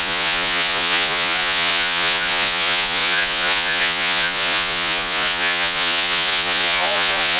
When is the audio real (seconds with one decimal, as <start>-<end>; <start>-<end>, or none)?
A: none